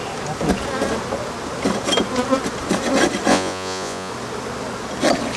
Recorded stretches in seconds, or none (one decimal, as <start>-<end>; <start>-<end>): 0.0-3.3; 4.1-5.4